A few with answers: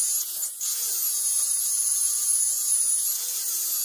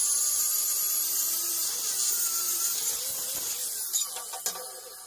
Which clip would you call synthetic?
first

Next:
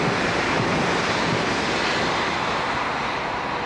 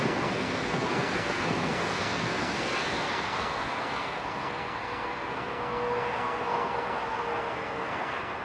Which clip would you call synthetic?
second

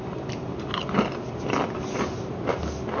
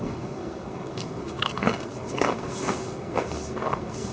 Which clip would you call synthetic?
second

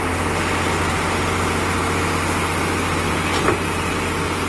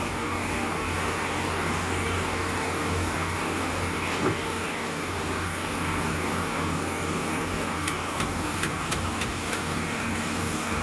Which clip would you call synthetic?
second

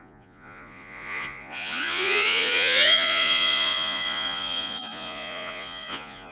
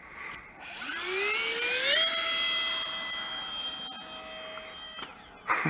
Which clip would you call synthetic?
first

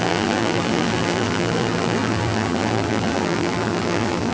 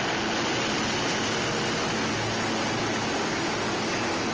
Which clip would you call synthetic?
first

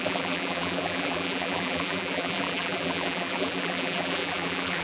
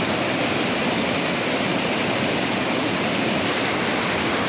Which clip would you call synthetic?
first